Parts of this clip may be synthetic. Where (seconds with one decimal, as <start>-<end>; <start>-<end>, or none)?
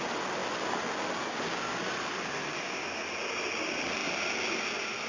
none